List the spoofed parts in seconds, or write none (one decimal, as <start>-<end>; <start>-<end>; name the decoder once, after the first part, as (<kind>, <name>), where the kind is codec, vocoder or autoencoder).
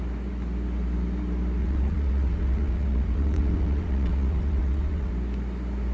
1.6-5.1 (vocoder, WaveNeXt)